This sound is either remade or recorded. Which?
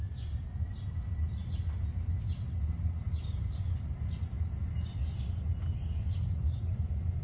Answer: recorded